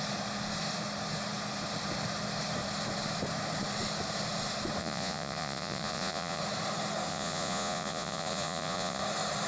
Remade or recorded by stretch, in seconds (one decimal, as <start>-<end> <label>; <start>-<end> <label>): 0.0-4.8 recorded; 4.8-6.4 remade; 6.4-7.1 recorded; 7.1-9.0 remade; 9.0-9.5 recorded